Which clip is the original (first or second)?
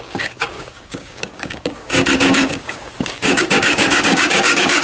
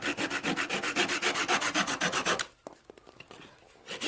second